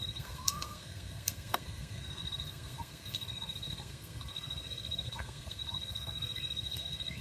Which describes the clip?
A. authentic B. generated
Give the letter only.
B